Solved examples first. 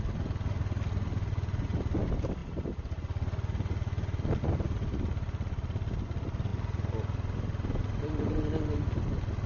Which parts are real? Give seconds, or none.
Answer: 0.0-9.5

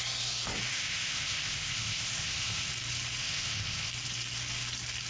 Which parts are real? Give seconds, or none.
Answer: 0.0-0.7; 2.7-3.2; 3.9-5.1

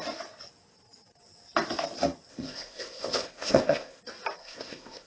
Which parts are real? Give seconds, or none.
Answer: 0.0-2.3; 4.0-4.4